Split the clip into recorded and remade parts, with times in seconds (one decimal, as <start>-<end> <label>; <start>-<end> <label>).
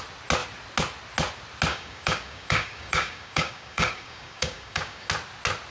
0.0-1.7 recorded; 1.7-5.1 remade; 5.1-5.7 recorded